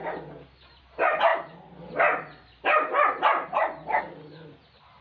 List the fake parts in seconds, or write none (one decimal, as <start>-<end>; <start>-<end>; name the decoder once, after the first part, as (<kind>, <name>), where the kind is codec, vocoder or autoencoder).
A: none